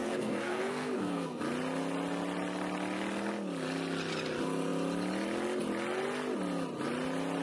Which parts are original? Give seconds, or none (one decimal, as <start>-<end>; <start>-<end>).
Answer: 1.4-7.4